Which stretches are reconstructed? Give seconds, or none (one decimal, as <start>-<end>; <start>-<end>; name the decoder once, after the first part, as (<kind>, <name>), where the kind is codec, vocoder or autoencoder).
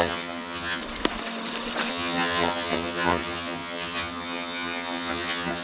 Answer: 0.0-0.8 (vocoder, HiFi-GAN); 1.9-5.6